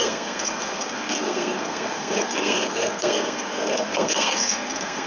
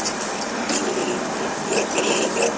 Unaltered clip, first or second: second